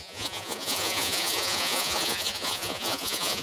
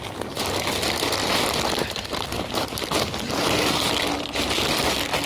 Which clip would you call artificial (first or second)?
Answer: first